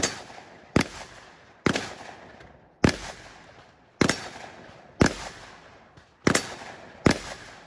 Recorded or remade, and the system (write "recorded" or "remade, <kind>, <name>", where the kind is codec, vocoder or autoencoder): recorded